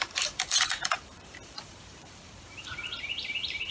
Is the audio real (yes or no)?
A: no